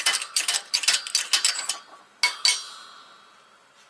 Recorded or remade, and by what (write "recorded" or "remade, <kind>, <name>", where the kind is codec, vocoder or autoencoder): recorded